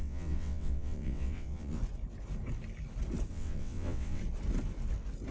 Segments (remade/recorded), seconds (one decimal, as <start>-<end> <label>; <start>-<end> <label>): 0.0-1.8 remade; 1.8-3.3 recorded; 3.3-4.2 remade; 4.2-5.3 recorded

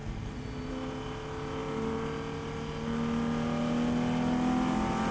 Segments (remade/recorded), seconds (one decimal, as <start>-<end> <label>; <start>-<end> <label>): 0.0-5.1 recorded

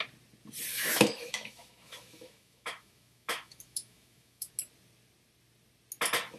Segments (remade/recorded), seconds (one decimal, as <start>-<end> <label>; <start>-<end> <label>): 0.0-0.7 recorded; 0.7-4.5 remade; 4.5-6.4 recorded

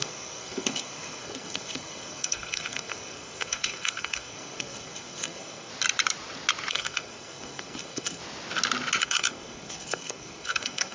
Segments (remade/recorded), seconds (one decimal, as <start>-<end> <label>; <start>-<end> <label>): 0.0-5.7 remade; 5.7-6.7 recorded; 6.7-8.2 remade; 8.2-9.0 recorded; 9.0-10.9 remade

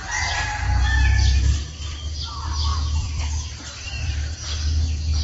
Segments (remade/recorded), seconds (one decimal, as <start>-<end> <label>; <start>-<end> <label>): 0.0-2.7 recorded; 2.7-4.1 remade; 4.1-5.2 recorded